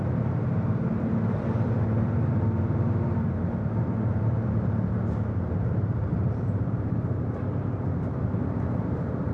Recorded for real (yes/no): no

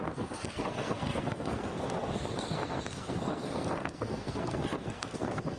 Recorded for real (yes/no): no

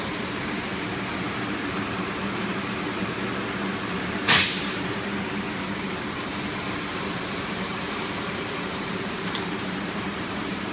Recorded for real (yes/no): no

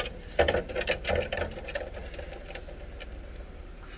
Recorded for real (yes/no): yes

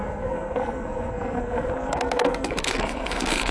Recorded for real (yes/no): no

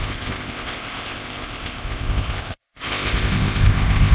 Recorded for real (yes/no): no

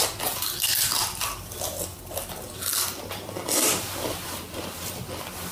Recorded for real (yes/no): yes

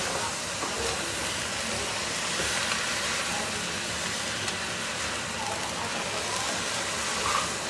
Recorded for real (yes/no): yes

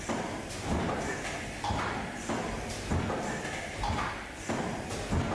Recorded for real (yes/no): no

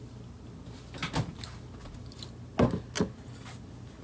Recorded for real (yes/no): yes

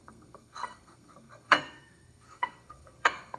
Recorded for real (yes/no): no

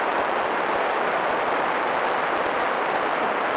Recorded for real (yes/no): yes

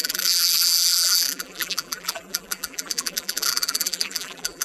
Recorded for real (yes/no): no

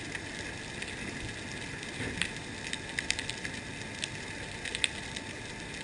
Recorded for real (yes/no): yes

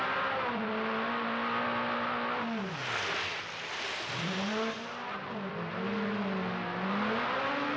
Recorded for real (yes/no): yes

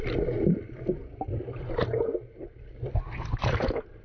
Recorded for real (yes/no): yes